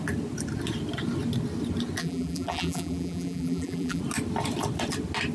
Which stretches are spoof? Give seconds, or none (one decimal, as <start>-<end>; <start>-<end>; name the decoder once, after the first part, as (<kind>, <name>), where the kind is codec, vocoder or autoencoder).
2.0-4.0 (vocoder, BigVGAN v2)